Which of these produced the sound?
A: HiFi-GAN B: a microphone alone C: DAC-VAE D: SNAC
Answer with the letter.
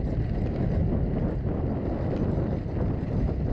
B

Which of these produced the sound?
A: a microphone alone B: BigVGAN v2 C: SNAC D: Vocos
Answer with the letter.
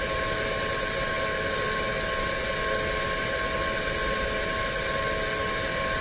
A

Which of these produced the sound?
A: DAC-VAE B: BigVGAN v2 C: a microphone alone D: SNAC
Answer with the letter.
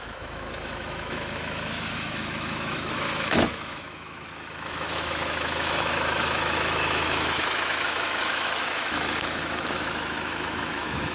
A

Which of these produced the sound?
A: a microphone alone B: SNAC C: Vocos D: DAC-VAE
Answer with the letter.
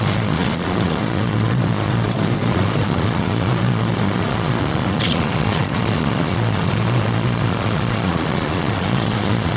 C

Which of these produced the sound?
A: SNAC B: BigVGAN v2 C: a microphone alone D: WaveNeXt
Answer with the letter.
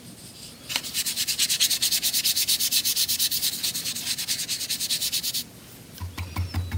C